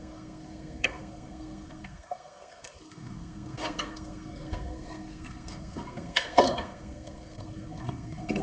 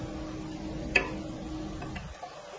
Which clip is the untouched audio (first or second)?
second